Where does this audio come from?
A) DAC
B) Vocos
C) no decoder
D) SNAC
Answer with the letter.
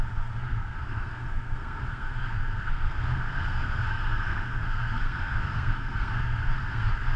D